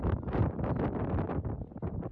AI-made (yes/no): no